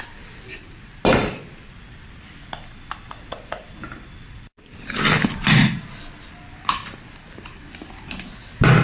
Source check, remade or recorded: remade